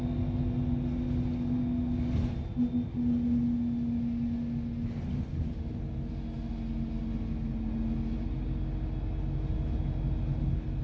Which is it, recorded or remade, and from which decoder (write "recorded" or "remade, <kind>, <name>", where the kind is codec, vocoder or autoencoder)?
recorded